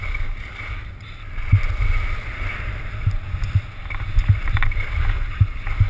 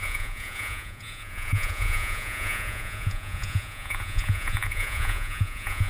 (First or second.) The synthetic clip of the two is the second